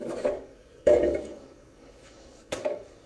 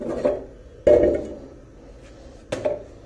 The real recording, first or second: second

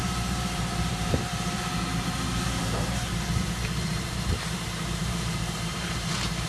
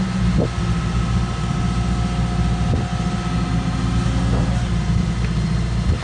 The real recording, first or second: second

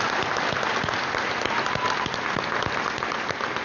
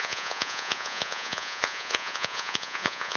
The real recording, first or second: first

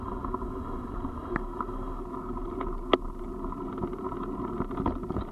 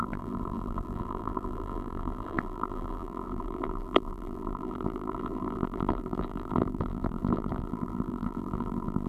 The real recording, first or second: first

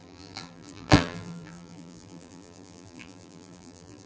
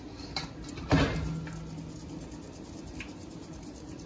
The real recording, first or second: second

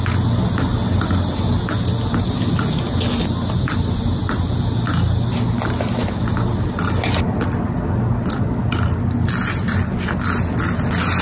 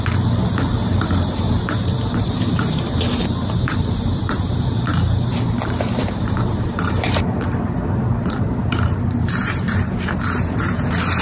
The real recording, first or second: first